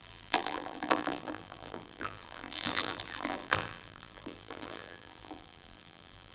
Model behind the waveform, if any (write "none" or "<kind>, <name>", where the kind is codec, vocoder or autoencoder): vocoder, BigVGAN v2